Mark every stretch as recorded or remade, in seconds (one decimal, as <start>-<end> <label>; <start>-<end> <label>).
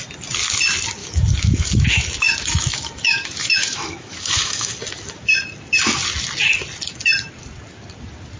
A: 0.0-1.0 recorded; 1.0-4.7 remade; 4.7-8.4 recorded